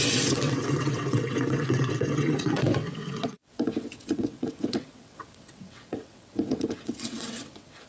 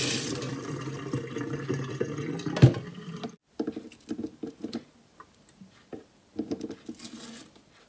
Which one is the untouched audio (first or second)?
second